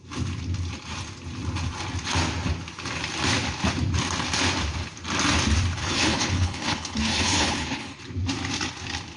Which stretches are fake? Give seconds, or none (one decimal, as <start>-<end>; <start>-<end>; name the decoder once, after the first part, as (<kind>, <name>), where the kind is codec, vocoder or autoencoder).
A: 5.8-8.0 (codec, HILCodec)